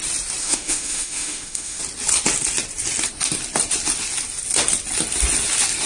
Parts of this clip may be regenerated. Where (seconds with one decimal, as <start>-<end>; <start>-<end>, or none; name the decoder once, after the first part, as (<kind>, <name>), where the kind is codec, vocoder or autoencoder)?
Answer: 0.4-1.8 (autoencoder, DAC-VAE)